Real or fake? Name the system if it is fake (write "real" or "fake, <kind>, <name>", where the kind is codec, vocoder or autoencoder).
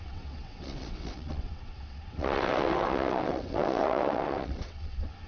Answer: fake, vocoder, WaveNeXt